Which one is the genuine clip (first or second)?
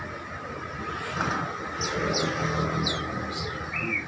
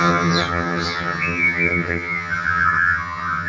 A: first